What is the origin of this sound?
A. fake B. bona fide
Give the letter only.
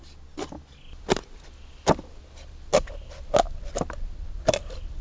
B